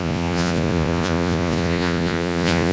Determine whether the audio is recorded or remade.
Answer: remade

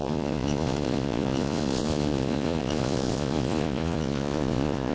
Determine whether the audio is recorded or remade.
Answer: remade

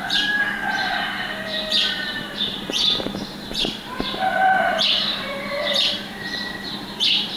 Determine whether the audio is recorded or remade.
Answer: remade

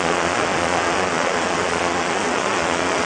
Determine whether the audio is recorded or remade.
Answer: remade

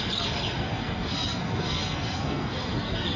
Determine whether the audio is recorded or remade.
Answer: remade